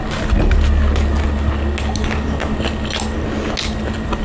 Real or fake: real